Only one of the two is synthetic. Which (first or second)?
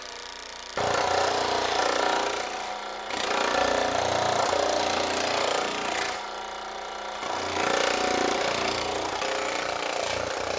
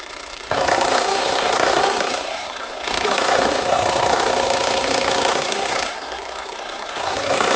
second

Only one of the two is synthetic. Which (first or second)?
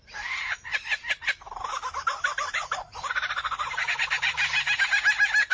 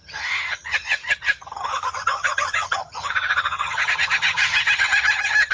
second